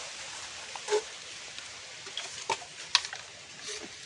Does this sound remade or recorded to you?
recorded